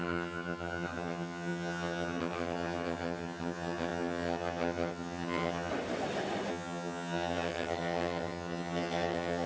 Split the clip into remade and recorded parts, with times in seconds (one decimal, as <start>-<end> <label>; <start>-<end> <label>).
0.0-5.7 remade; 5.7-6.5 recorded; 6.5-9.5 remade